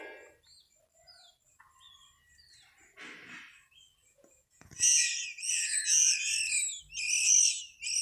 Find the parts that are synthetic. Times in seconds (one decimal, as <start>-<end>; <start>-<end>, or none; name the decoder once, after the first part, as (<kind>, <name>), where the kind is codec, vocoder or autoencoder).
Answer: 4.0-6.1 (vocoder, Vocos)